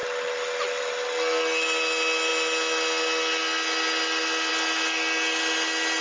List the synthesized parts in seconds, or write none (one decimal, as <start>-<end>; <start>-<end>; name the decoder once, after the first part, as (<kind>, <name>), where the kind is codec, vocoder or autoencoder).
none